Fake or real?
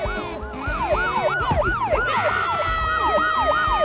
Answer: real